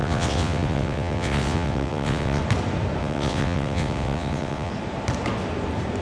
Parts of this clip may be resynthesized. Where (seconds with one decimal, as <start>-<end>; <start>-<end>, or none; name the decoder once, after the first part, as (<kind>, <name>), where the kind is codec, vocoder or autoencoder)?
0.0-2.4 (vocoder, WaveNeXt); 3.0-4.7